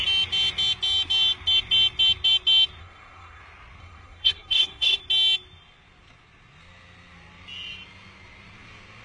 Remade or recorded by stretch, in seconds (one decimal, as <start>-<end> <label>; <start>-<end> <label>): 0.0-2.8 recorded; 2.8-3.4 remade; 3.4-3.8 recorded; 3.8-5.0 remade; 5.0-9.0 recorded